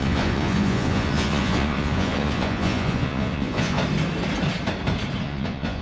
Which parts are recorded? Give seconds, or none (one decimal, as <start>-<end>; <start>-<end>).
3.8-5.2